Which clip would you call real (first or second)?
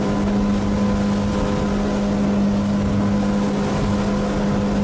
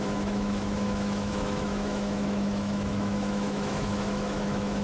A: first